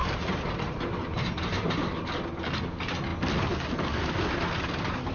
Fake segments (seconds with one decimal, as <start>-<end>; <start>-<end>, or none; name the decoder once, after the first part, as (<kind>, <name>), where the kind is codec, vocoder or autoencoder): 0.0-2.0 (vocoder, BigVGAN v2)